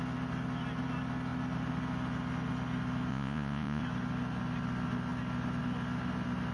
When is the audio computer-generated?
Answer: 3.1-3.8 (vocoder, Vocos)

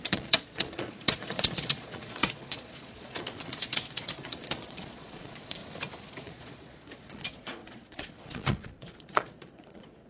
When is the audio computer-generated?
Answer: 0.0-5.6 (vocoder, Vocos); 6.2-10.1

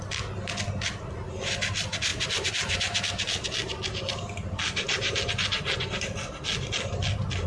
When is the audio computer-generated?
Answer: none